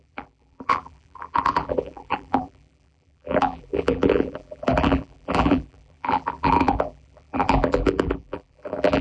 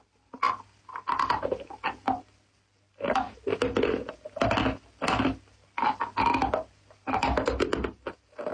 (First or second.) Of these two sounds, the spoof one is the first